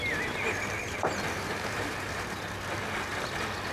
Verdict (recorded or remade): recorded